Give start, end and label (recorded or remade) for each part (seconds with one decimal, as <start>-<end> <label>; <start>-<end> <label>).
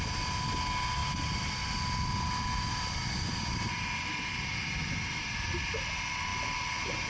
0.0-7.1 recorded